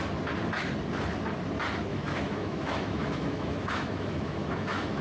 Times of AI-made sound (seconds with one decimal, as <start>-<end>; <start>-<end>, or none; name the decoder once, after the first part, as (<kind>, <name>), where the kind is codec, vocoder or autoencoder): 1.9-5.0 (autoencoder, DAC-VAE)